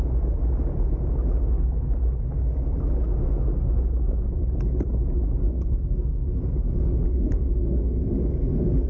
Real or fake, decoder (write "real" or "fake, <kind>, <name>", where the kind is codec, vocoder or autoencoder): real